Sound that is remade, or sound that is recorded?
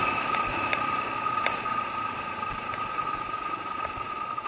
recorded